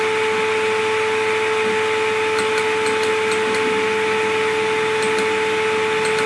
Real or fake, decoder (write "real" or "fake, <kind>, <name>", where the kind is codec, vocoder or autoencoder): real